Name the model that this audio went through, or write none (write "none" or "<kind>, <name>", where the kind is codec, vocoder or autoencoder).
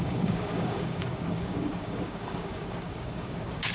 codec, DAC